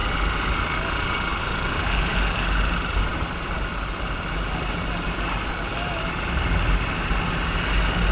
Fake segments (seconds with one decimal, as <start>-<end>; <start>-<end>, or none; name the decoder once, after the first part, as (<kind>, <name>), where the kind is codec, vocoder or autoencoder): none